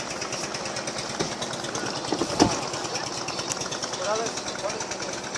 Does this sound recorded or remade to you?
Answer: recorded